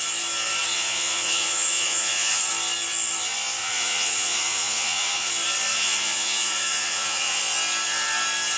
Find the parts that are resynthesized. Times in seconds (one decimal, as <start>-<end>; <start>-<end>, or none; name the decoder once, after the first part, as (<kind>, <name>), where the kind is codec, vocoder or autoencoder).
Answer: 0.7-2.4 (vocoder, Vocos); 3.6-5.3; 5.7-7.4